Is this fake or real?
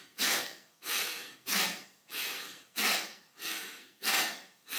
fake